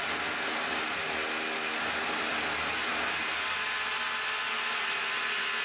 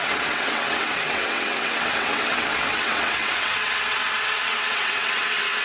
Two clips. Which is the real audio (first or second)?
first